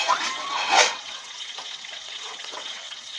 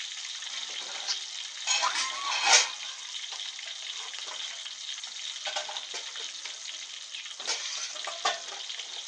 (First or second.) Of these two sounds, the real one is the second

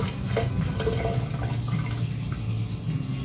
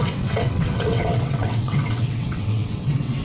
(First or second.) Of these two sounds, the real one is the first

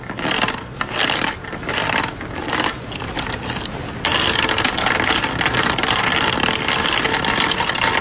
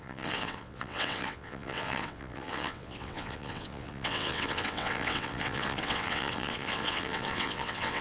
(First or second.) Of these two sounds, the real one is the first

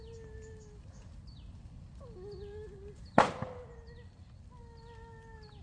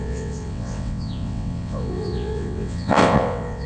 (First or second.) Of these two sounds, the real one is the first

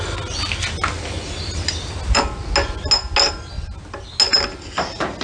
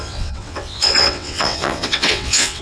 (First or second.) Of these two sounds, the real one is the first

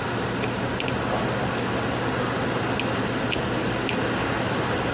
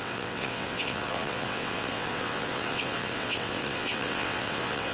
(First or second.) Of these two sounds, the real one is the first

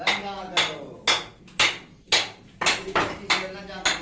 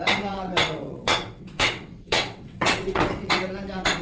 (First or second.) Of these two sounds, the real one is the first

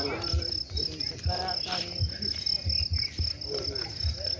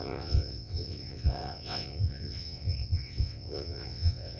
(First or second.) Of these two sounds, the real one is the first